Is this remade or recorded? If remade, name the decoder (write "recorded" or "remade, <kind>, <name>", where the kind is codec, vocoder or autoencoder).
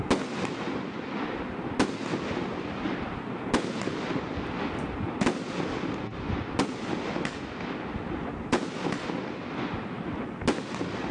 recorded